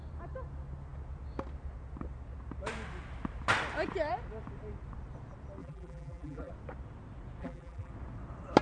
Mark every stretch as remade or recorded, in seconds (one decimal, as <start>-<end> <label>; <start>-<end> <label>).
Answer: 0.0-5.6 recorded; 5.6-6.5 remade; 6.5-7.4 recorded; 7.4-7.9 remade; 7.9-8.6 recorded